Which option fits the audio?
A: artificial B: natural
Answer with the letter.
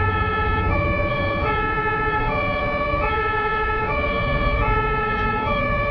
A